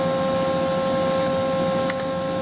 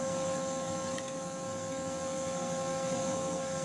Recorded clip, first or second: first